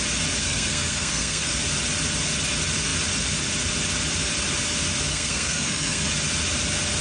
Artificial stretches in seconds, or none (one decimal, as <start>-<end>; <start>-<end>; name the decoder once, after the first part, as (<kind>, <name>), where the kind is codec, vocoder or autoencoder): 0.4-1.5 (codec, SNAC); 5.1-6.1